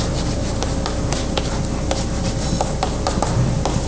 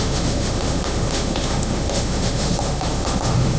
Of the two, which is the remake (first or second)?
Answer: second